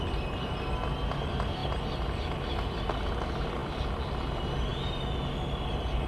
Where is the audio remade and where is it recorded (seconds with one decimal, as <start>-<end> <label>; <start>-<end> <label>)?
0.0-6.1 recorded